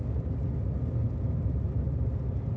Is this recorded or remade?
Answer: recorded